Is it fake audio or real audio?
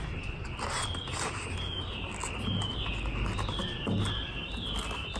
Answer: real